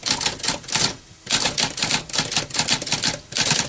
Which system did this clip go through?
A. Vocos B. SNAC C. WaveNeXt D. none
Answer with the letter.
D